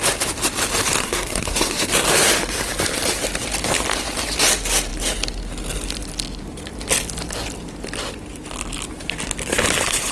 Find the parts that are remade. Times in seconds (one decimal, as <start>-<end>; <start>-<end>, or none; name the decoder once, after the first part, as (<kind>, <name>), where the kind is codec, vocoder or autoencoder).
1.0-1.9 (codec, SNAC)